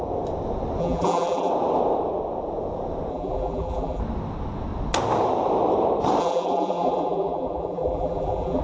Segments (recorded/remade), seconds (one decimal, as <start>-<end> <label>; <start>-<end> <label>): 0.0-0.8 recorded; 0.8-1.5 remade; 1.5-3.1 recorded; 3.1-4.0 remade; 4.0-6.2 recorded; 6.2-8.6 remade